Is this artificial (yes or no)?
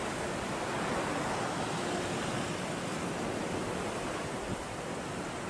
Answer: no